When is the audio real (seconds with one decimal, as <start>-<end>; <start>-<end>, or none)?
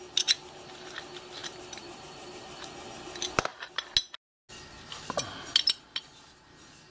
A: 0.0-1.4; 2.7-6.9